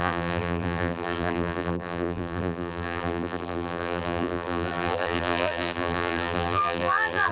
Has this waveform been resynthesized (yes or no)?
yes